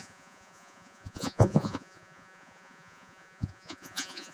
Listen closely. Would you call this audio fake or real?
fake